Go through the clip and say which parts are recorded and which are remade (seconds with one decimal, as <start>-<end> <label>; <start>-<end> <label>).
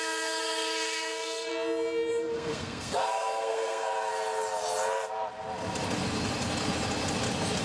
0.0-1.5 remade; 1.5-2.1 recorded; 2.1-4.1 remade; 4.1-7.6 recorded